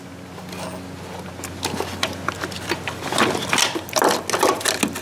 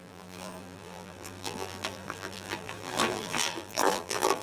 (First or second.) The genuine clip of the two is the first